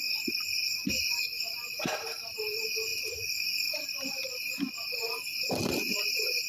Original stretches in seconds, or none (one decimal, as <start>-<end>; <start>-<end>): 0.0-2.9; 4.2-6.5